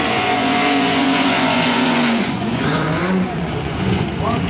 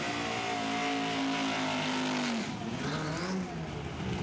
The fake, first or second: first